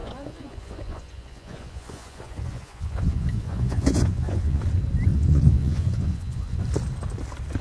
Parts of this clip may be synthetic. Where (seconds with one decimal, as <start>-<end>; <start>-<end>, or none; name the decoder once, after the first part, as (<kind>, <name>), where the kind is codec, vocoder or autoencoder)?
0.0-4.6 (vocoder, Vocos); 5.1-6.6